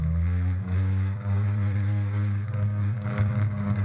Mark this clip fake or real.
fake